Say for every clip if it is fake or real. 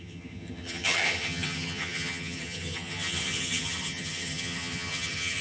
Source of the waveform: fake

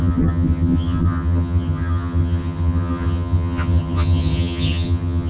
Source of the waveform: fake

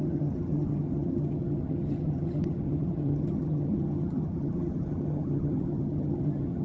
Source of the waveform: fake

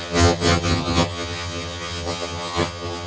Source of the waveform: fake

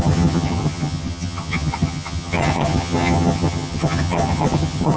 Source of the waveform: fake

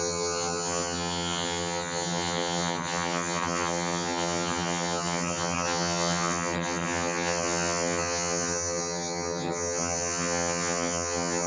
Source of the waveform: fake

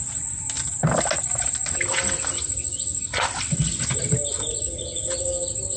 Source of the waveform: real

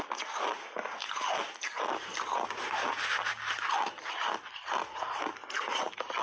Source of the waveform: real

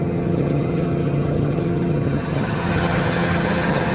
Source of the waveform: fake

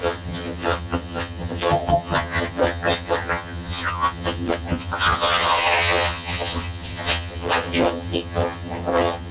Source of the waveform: fake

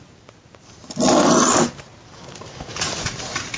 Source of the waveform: real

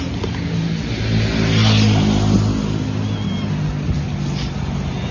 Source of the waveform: real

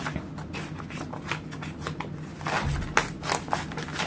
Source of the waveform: real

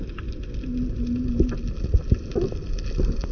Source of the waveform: real